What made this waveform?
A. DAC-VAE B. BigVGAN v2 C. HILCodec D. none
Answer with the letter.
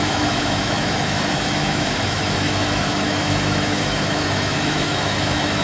A